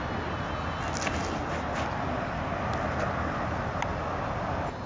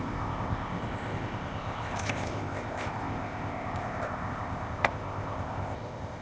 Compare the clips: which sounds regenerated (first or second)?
second